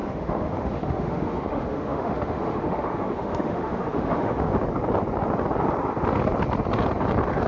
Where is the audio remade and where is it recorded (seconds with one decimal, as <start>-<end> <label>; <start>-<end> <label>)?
0.0-4.5 remade; 4.5-7.5 recorded

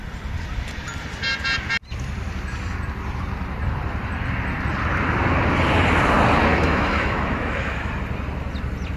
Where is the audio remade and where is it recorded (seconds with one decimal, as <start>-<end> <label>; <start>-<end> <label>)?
0.0-6.5 recorded; 6.5-7.9 remade; 7.9-9.0 recorded